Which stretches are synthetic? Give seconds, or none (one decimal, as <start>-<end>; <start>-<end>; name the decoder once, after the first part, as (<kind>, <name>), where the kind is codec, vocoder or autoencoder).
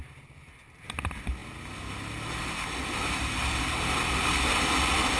none